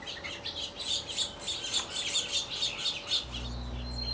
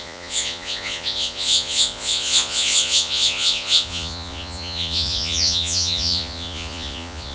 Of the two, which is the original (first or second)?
first